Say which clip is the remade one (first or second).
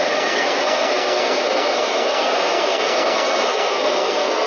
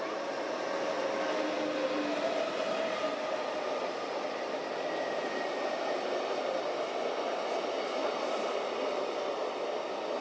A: first